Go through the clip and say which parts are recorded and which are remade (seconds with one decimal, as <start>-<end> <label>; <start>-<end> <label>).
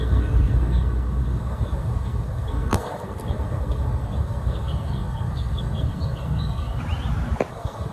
0.0-6.8 remade; 6.8-7.5 recorded; 7.5-7.9 remade